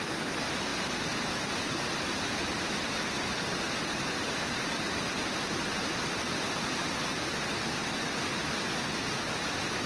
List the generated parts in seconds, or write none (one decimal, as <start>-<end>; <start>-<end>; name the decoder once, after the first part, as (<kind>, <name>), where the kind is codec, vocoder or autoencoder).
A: none